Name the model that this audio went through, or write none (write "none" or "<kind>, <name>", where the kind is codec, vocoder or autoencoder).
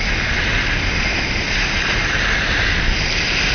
none